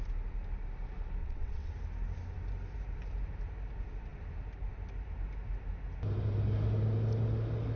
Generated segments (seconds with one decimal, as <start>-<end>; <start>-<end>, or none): 1.2-1.7